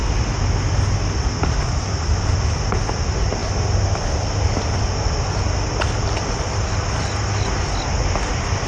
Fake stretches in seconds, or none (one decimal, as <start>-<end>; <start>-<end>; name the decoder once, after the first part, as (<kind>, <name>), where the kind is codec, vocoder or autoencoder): none